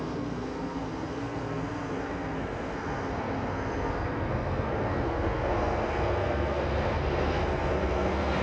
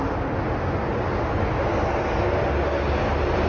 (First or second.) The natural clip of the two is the second